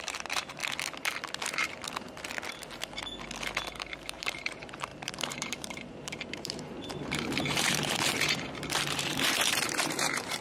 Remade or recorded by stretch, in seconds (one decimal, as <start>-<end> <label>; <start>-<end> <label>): 0.0-0.6 remade; 0.6-3.8 recorded; 3.8-10.4 remade